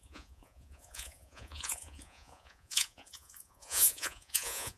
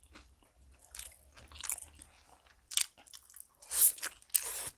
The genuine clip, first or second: second